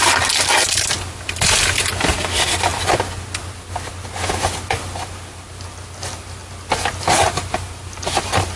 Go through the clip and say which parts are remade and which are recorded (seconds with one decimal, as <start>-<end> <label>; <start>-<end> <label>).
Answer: 0.0-2.7 remade; 2.7-6.0 recorded; 6.0-6.4 remade; 6.4-7.0 recorded; 7.0-8.6 remade